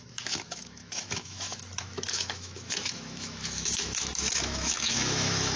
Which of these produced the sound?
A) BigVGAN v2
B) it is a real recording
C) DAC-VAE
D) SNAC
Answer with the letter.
C